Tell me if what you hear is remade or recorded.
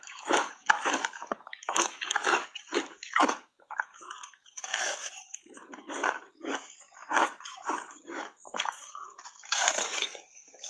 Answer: remade